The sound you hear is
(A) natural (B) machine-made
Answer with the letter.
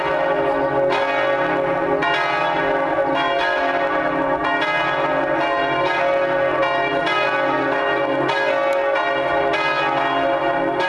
A